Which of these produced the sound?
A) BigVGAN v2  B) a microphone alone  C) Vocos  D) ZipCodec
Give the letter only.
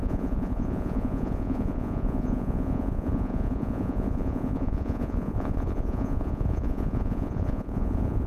C